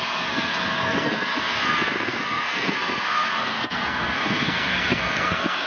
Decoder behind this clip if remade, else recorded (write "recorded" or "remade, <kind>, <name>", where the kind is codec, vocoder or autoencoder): remade, codec, SNAC